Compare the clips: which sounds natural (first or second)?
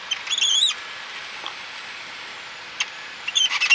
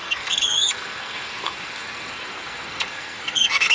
first